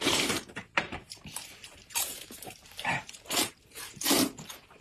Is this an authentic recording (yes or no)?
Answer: no